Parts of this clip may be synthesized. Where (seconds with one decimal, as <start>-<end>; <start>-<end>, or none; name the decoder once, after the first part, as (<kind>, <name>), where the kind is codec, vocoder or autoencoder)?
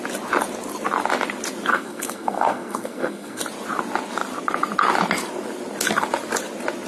1.7-3.4 (codec, SNAC)